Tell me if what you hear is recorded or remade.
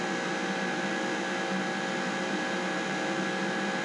recorded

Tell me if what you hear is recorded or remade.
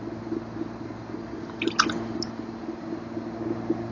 recorded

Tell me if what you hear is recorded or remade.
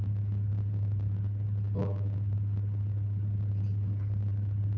recorded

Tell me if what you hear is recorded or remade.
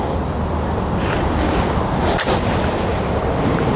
recorded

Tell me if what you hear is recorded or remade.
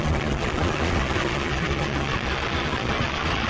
remade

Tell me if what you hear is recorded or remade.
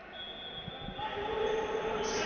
recorded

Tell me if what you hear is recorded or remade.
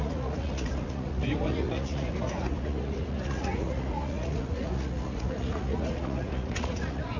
remade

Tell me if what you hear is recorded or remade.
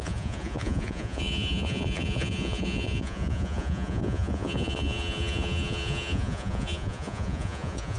remade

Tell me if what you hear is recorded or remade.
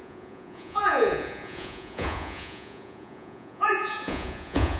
remade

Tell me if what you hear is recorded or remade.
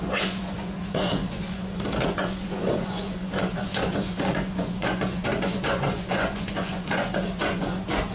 remade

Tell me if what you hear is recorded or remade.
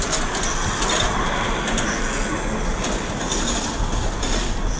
recorded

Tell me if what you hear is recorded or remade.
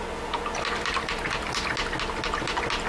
recorded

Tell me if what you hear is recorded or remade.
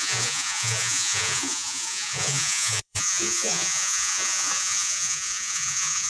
remade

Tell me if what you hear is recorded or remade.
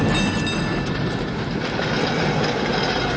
recorded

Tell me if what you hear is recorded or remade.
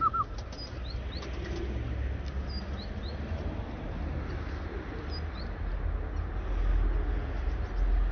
recorded